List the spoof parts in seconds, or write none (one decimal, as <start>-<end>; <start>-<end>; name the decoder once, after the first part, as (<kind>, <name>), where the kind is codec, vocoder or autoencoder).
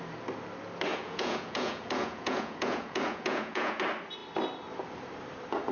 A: 0.9-3.8 (vocoder, Vocos)